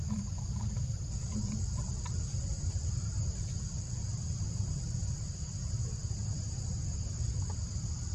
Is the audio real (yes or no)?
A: no